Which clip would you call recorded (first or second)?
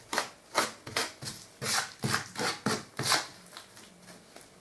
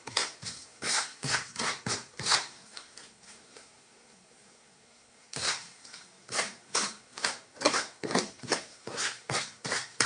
first